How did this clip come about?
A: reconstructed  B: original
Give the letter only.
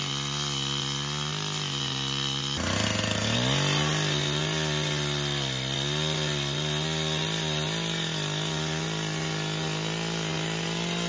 B